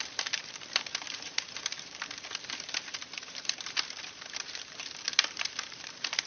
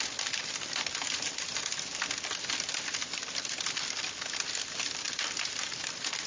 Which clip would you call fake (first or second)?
first